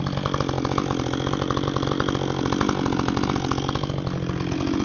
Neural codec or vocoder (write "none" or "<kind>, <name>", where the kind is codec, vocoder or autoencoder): none